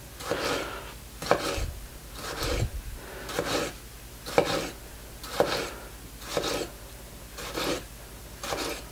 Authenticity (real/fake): real